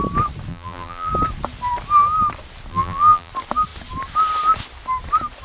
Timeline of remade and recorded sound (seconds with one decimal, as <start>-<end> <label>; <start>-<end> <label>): 0.0-0.5 recorded; 0.5-1.1 remade; 1.1-2.7 recorded; 2.7-3.3 remade; 3.3-5.4 recorded